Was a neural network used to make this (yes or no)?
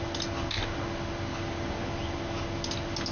no